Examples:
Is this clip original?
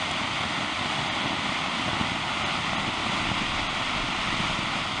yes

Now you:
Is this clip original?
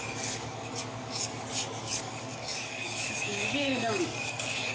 no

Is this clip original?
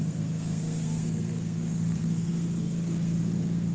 no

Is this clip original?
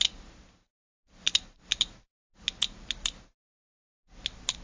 yes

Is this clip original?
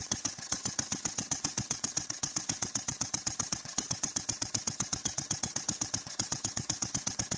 no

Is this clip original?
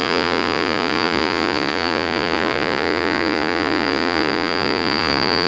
no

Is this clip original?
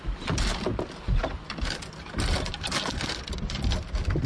yes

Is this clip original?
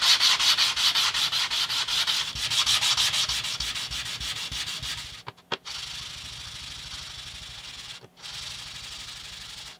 yes